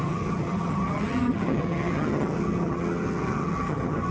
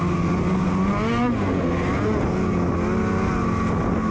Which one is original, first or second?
second